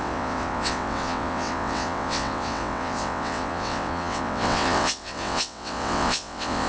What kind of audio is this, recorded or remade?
remade